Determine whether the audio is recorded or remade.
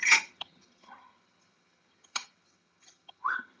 remade